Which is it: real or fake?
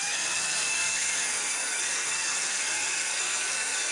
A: fake